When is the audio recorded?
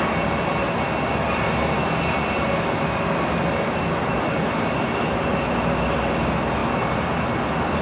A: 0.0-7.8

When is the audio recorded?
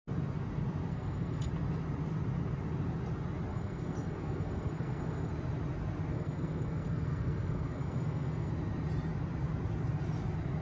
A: 0.0-0.9; 1.5-3.5; 5.3-6.1; 8.5-10.6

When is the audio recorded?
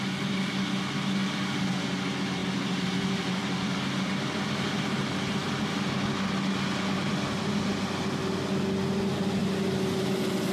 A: 0.0-10.5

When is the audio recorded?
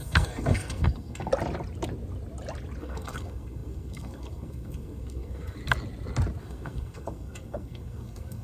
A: 1.3-2.8; 5.6-6.4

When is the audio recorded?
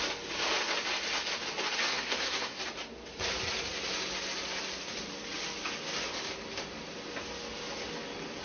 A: 0.0-1.9; 2.6-8.4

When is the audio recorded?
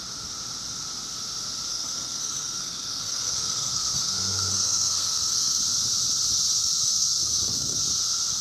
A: 0.0-1.7; 5.6-6.6; 7.8-8.4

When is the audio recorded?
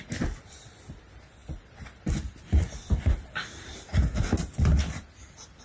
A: 0.0-5.6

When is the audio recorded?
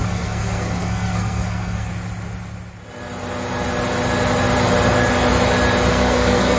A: 1.9-5.9